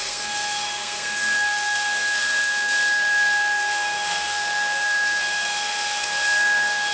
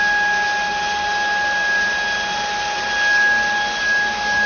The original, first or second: second